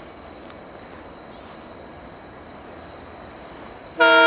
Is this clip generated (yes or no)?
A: no